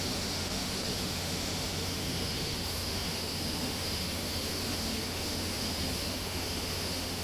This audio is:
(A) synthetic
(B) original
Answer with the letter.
A